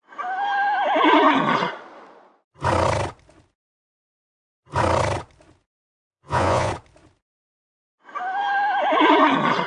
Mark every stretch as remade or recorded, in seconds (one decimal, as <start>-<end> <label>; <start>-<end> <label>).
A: 0.0-6.1 recorded; 6.1-6.7 remade; 6.7-9.7 recorded